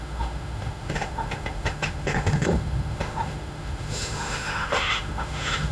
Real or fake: fake